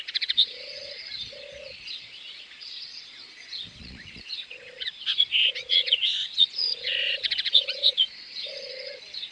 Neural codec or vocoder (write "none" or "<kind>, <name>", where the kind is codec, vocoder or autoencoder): vocoder, Vocos